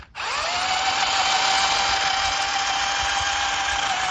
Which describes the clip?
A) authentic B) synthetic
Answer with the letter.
A